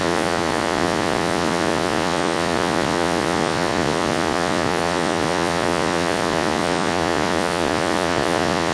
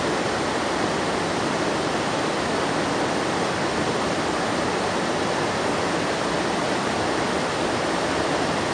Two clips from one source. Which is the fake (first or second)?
first